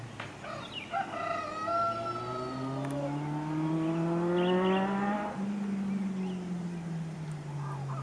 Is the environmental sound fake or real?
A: real